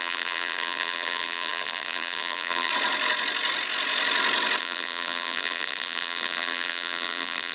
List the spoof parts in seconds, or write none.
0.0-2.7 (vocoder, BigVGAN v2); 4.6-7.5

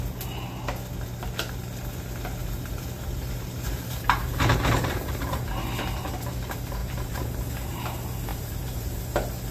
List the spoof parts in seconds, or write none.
2.4-5.5 (vocoder, BigVGAN v2); 6.8-7.8; 8.3-9.0

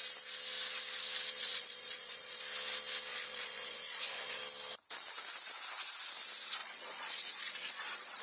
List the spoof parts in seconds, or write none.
1.4-2.4 (vocoder, Vocos); 3.1-4.4; 6.6-8.2

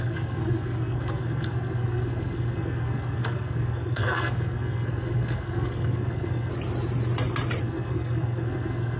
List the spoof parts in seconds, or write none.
0.0-6.5 (codec, SNAC); 7.6-9.0

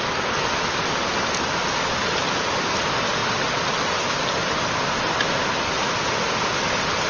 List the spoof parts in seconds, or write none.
2.0-2.6 (vocoder, BigVGAN v2)

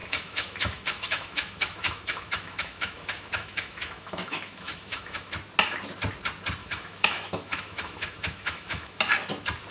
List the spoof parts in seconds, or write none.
0.0-5.3 (autoencoder, DAC-VAE); 6.6-9.0

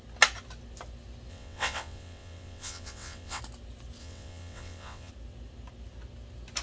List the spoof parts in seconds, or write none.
1.3-3.4 (vocoder, WaveNeXt); 4.0-5.1

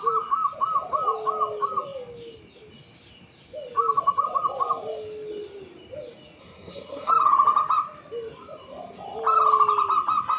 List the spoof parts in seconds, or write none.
6.4-7.1 (codec, SNAC)